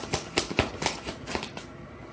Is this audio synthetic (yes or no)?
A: no